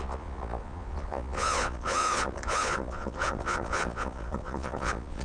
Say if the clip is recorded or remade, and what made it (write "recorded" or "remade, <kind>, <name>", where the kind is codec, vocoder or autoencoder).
remade, vocoder, Vocos